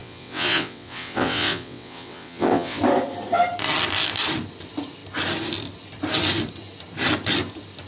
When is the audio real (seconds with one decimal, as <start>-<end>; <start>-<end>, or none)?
2.8-7.9